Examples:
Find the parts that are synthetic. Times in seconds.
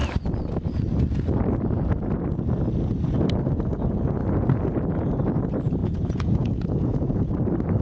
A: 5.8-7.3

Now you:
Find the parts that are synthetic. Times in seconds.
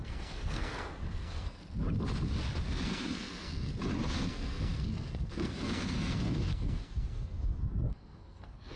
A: 0.0-1.6; 2.6-3.7; 4.2-8.8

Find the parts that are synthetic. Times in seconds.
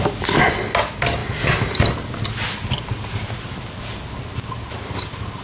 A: none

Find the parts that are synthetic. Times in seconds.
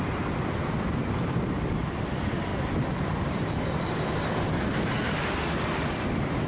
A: 2.5-4.7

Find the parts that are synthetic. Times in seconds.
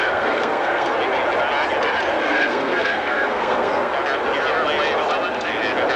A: 0.0-0.9; 2.1-3.9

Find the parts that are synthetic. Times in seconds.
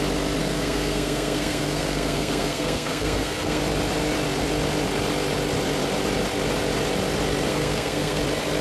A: 0.4-3.6; 7.5-8.2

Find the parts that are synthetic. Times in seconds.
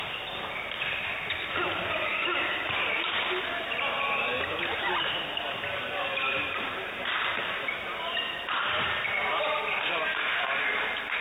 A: 0.0-2.1; 5.3-11.2